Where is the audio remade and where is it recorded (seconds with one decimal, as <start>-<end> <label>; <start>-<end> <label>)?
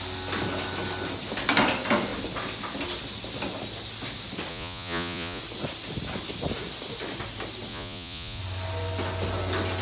0.0-4.5 recorded; 4.5-5.4 remade; 5.4-7.7 recorded; 7.7-8.4 remade; 8.4-9.8 recorded